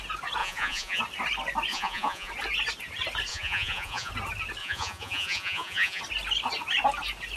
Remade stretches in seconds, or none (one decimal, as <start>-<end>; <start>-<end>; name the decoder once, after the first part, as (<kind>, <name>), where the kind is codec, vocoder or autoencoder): 0.4-1.0 (vocoder, Vocos); 1.7-2.3; 3.3-4.1; 4.6-6.0